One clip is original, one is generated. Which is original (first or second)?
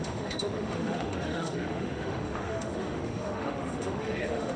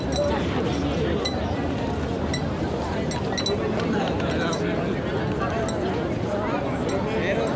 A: second